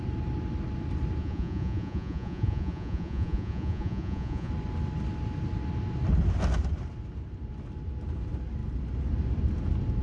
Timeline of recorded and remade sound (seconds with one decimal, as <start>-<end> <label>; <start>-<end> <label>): 0.0-1.2 recorded; 1.2-4.5 remade; 4.5-10.0 recorded